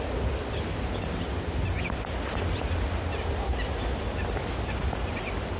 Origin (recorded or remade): recorded